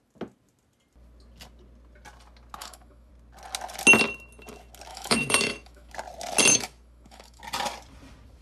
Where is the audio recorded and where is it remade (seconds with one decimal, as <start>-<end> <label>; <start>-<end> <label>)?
0.0-2.6 recorded; 2.6-3.1 remade; 3.1-4.9 recorded; 4.9-5.9 remade; 5.9-6.5 recorded; 6.5-7.4 remade; 7.4-8.4 recorded